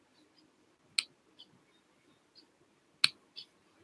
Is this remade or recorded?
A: recorded